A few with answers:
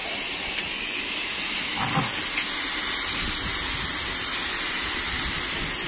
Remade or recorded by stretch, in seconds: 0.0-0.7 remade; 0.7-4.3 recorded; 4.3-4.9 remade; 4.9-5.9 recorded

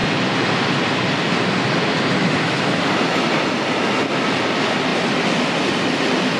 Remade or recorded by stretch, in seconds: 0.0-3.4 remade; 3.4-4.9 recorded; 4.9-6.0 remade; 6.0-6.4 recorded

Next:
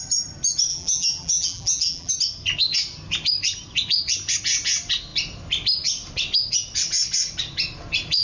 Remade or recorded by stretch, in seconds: 0.0-0.7 recorded; 0.7-2.1 remade; 2.1-8.2 recorded